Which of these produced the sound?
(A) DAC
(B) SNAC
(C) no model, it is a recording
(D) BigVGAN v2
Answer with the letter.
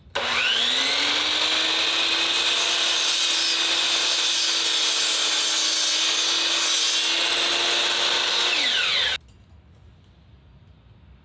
C